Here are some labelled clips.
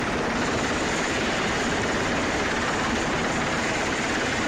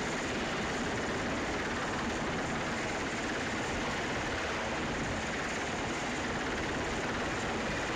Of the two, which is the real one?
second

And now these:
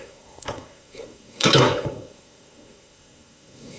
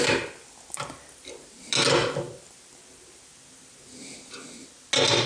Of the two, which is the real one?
second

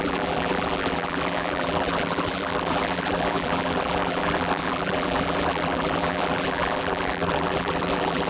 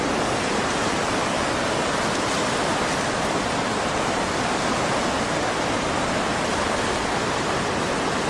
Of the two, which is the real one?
second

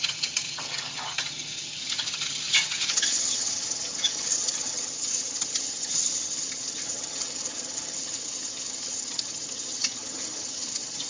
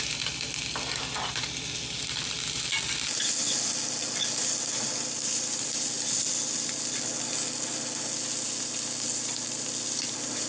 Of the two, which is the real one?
second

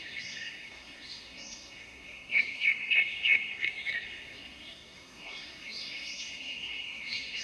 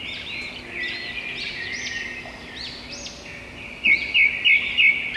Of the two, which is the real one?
second